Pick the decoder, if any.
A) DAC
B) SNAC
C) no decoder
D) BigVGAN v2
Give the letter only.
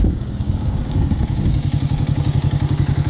A